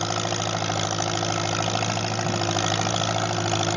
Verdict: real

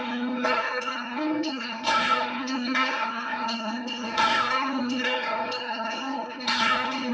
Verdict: fake